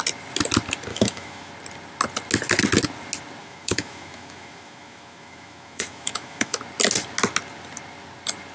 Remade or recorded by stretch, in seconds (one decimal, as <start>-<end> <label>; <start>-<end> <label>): 0.0-0.9 recorded; 0.9-1.5 remade; 1.5-3.4 recorded; 3.4-6.6 remade; 6.6-8.5 recorded